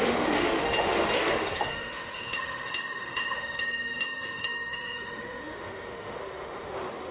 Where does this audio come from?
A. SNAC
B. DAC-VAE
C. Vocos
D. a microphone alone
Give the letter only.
B